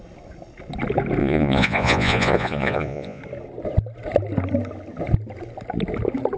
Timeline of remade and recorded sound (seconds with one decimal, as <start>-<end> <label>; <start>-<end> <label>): 0.0-1.2 recorded; 1.2-3.2 remade; 3.2-6.4 recorded